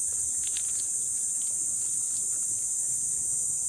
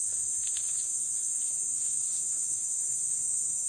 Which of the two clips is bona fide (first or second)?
first